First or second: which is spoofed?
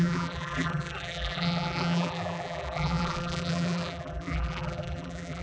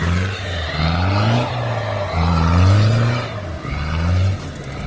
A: first